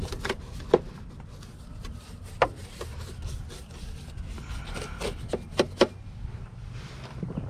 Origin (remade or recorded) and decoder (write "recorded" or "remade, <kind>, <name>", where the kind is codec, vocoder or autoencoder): recorded